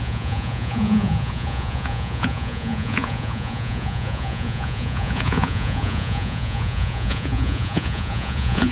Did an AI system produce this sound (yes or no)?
yes